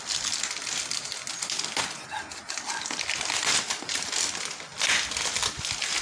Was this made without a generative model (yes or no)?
yes